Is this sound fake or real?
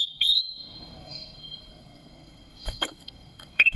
fake